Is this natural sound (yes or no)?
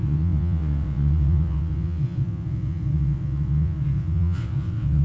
no